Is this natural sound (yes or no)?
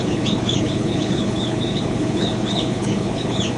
no